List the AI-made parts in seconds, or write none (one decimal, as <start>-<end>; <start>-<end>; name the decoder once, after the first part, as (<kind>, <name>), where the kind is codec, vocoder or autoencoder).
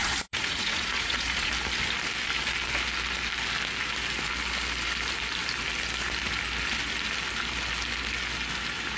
0.0-1.5 (vocoder, Vocos)